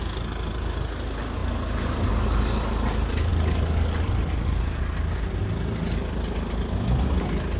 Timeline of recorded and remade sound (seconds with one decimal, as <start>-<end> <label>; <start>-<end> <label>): 0.0-7.6 recorded